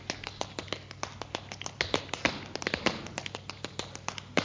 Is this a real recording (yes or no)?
yes